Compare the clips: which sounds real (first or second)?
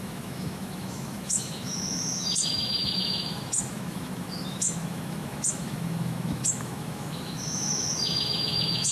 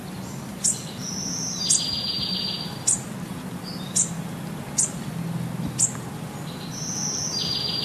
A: second